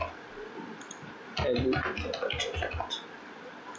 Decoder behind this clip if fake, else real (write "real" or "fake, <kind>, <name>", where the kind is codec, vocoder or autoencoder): real